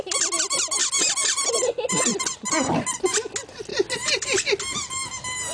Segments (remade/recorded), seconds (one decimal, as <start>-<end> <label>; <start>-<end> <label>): 0.0-3.7 recorded; 3.7-4.6 remade; 4.6-5.5 recorded